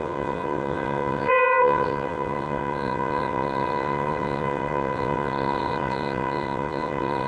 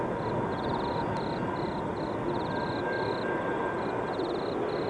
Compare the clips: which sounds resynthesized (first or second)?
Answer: first